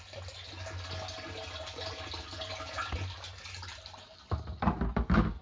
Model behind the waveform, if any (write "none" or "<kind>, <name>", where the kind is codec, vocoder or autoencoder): none